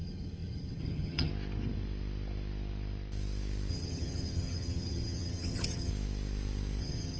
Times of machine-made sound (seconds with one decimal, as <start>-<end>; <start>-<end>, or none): 0.0-1.3; 3.7-5.9; 6.8-7.2